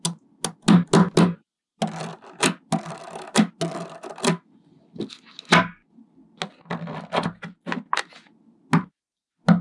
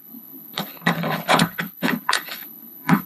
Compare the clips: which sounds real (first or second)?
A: first